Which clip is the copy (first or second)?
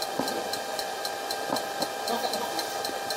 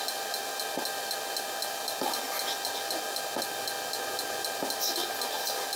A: first